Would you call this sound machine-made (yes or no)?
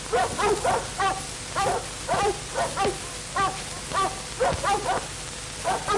no